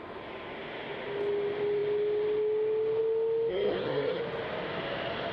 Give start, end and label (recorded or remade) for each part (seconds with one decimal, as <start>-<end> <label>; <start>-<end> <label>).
0.0-3.5 recorded; 3.5-4.2 remade; 4.2-5.3 recorded